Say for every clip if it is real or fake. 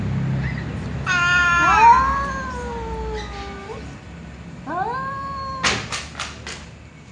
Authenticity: real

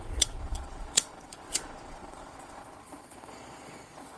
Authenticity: fake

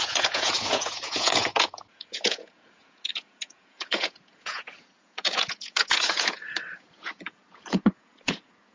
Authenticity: fake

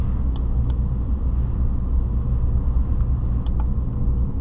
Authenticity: real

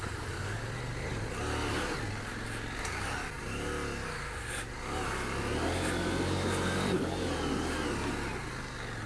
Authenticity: real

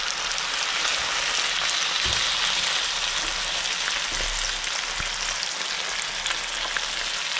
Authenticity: real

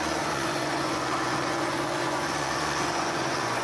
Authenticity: fake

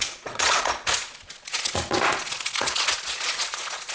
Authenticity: fake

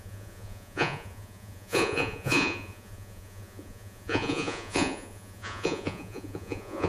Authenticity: fake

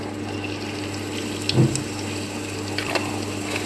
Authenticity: real